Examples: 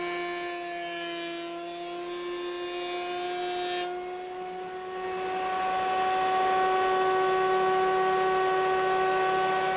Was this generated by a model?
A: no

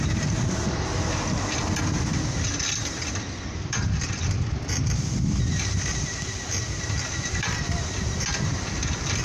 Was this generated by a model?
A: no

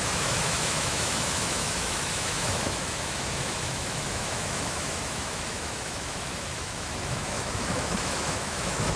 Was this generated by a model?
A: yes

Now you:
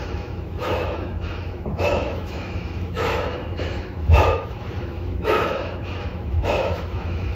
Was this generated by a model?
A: yes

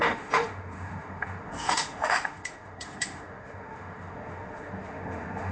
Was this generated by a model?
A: yes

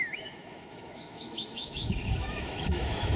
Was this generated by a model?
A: yes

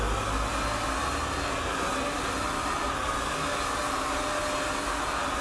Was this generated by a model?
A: no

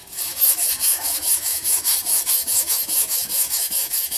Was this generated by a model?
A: yes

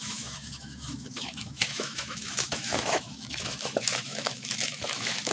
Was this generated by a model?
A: yes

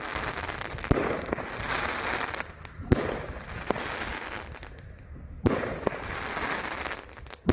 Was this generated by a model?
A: no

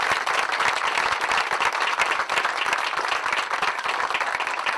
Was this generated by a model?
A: no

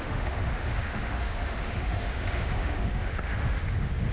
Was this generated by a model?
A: yes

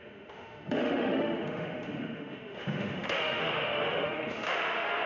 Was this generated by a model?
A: yes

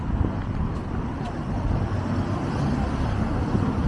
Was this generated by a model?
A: no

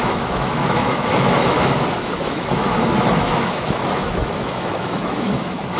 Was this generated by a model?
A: yes